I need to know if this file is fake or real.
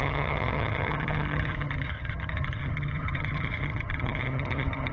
fake